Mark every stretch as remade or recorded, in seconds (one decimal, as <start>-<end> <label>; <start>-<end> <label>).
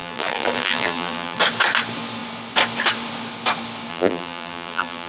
0.0-1.4 remade; 1.4-3.9 recorded; 3.9-5.1 remade